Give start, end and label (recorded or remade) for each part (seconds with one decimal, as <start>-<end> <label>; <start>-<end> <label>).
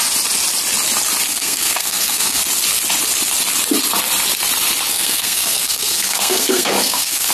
0.0-1.3 recorded; 1.3-2.4 remade; 2.4-4.9 recorded; 4.9-7.3 remade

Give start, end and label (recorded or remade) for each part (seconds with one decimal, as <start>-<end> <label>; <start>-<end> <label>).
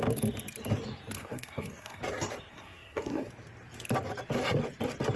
0.0-1.2 recorded; 1.2-2.0 remade; 2.0-2.5 recorded; 2.5-3.3 remade; 3.3-5.2 recorded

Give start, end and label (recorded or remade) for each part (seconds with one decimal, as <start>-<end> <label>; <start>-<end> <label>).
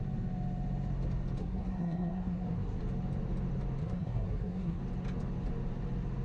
0.0-1.4 recorded; 1.4-2.8 remade; 2.8-3.8 recorded; 3.8-4.8 remade; 4.8-6.2 recorded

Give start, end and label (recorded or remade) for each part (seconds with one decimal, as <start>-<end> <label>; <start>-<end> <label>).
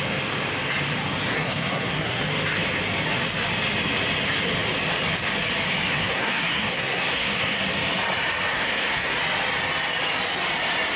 0.0-1.3 recorded; 1.3-2.2 remade; 2.2-5.9 recorded; 5.9-7.6 remade; 7.6-8.5 recorded; 8.5-9.2 remade; 9.2-11.0 recorded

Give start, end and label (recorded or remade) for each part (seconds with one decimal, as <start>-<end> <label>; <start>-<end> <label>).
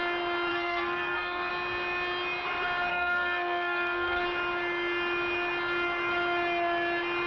0.0-0.5 recorded; 0.5-1.5 remade; 1.5-2.9 recorded; 2.9-4.2 remade; 4.2-7.3 recorded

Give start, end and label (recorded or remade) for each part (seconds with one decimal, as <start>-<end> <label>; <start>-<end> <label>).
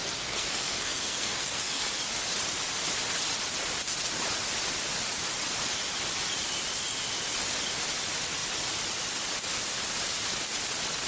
0.0-1.9 remade; 1.9-11.1 recorded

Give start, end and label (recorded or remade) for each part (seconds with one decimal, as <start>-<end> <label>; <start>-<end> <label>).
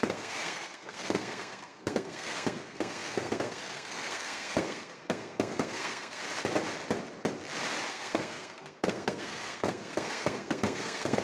0.0-6.2 remade; 6.2-7.9 recorded; 7.9-11.2 remade